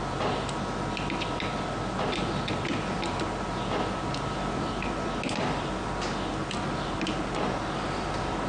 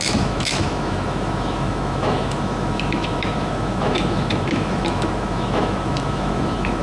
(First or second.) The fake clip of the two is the second